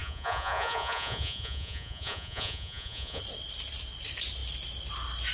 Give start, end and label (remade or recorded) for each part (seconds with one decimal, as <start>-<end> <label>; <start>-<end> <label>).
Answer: 0.0-3.2 remade; 3.2-5.3 recorded